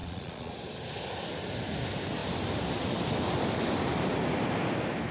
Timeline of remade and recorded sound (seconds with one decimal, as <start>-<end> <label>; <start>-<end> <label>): 0.0-0.5 remade; 0.5-5.1 recorded